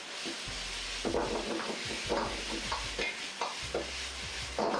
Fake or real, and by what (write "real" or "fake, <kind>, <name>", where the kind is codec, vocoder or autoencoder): real